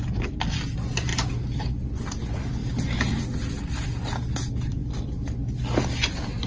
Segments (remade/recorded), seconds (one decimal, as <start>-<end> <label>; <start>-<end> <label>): 0.0-6.5 recorded